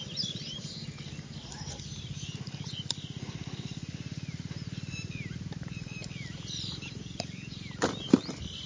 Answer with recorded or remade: recorded